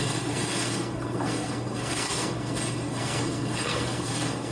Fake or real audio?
fake